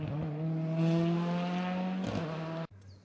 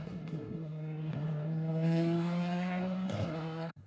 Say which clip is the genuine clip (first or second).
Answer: first